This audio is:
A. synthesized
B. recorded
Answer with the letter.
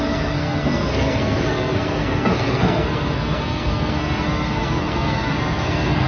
A